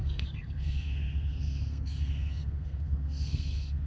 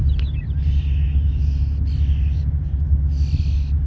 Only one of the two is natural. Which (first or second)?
second